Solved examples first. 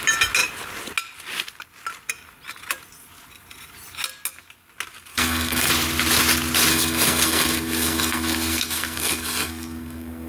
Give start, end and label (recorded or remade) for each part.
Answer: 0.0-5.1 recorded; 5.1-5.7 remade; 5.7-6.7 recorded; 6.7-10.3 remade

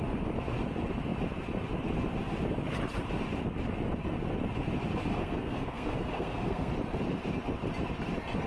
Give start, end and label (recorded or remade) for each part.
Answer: 0.0-5.1 recorded; 5.1-6.7 remade; 6.7-8.5 recorded

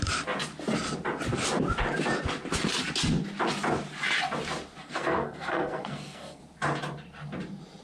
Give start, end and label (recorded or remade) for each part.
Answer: 0.0-4.8 recorded; 4.8-6.4 remade; 6.4-7.8 recorded